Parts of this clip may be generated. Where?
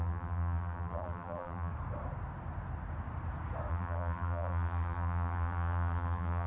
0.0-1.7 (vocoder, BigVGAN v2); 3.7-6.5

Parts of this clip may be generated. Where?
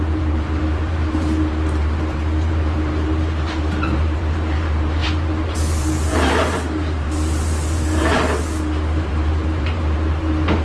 0.0-10.6 (vocoder, BigVGAN v2)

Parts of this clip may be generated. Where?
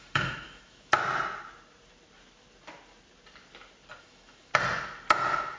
0.0-1.0 (autoencoder, DAC-VAE); 4.0-4.5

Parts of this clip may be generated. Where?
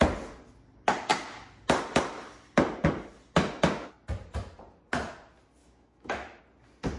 5.6-6.4 (autoencoder, DAC-VAE)